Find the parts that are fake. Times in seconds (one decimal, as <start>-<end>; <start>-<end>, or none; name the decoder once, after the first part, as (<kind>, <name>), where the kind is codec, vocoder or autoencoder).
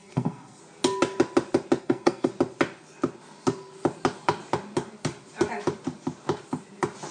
0.0-0.6 (codec, SNAC); 1.8-2.3